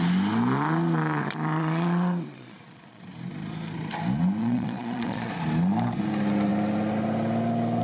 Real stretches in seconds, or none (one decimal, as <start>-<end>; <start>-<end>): 0.0-1.2; 3.0-4.4; 5.3-7.8